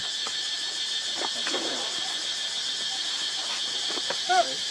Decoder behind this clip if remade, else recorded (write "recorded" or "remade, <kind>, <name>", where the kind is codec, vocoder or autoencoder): recorded